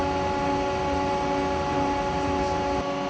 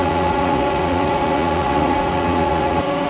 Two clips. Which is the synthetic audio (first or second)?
second